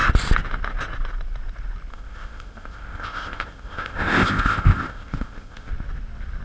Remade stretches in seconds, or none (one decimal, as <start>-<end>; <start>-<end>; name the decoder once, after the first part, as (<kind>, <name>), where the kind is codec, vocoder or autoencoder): 1.9-5.7 (codec, ZipCodec)